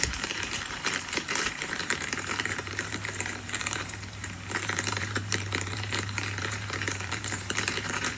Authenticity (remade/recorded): remade